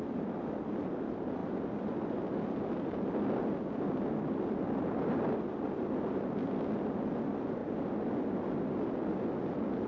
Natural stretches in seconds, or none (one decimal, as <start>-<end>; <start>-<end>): 0.0-9.9